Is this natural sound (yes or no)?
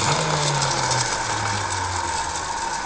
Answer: yes